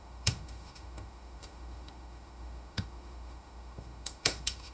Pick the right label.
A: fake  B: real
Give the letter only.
A